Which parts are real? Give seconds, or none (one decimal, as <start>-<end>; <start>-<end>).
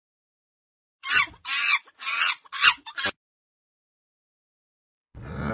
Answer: 0.0-1.0; 2.9-3.8